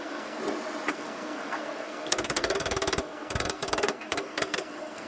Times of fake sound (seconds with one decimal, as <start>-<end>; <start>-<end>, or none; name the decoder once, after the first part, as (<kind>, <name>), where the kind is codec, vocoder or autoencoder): 0.0-0.4 (codec, SNAC); 0.9-5.1